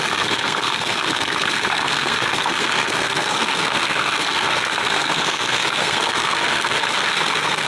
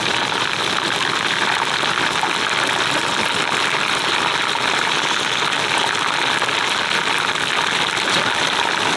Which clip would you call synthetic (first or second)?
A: first